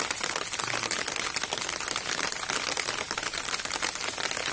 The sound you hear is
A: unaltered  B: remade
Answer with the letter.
A